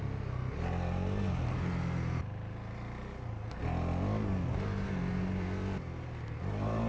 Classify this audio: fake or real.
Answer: real